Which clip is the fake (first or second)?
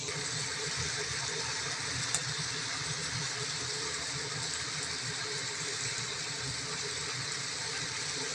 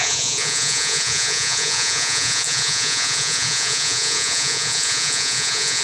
second